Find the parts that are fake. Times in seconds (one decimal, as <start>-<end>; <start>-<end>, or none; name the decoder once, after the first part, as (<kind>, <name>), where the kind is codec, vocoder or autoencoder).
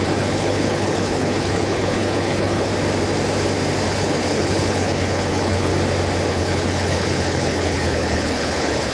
0.0-2.7 (codec, HILCodec); 3.9-5.7; 6.3-8.9